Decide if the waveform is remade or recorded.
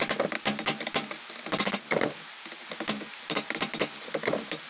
recorded